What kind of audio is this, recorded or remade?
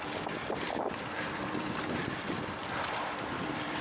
remade